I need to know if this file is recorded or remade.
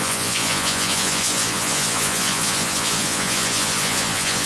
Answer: remade